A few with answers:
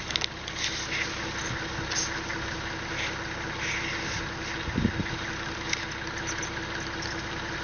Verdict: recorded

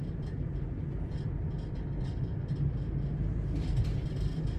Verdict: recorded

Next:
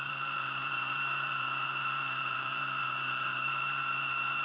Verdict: remade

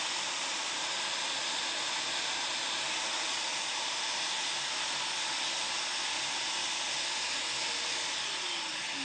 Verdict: recorded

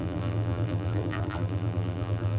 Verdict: remade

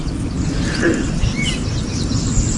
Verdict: recorded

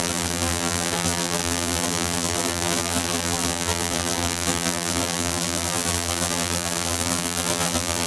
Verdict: remade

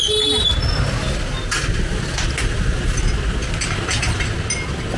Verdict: recorded